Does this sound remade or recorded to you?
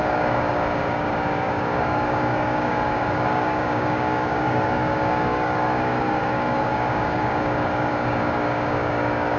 remade